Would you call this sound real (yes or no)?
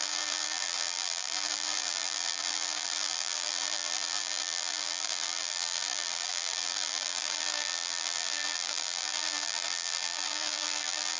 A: no